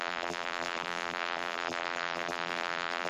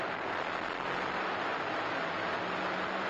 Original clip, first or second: second